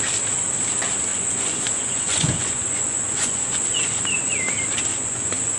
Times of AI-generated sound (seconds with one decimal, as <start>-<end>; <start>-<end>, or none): 1.1-4.3; 4.9-5.6